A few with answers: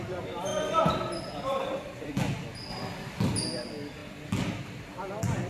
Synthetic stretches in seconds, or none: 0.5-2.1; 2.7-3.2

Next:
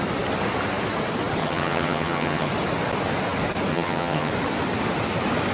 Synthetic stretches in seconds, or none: 1.4-2.5; 3.7-4.3

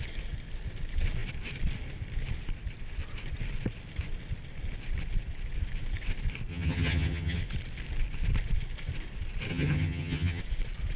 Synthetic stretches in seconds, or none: 6.5-7.4; 9.5-10.4

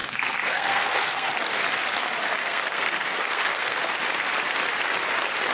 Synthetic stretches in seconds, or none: 0.0-1.5; 2.4-3.9

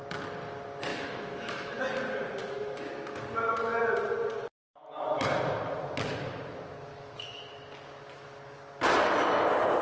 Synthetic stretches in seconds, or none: 0.9-1.8; 2.4-2.9; 6.9-7.5

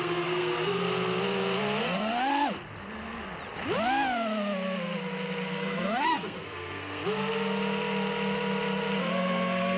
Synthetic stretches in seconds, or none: 0.0-0.8; 1.8-2.3; 5.5-7.0; 9.0-9.8

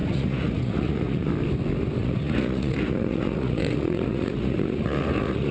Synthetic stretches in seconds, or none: 0.0-1.3; 2.0-5.5

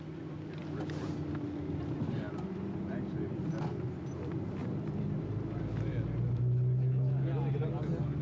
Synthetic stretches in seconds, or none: 0.0-0.6; 2.1-5.9